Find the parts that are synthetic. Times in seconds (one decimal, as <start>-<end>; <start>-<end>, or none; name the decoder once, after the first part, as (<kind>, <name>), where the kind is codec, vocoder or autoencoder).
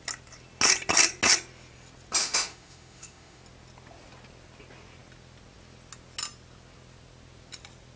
2.2-3.4 (autoencoder, DAC-VAE)